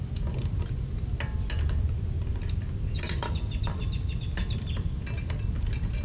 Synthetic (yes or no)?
no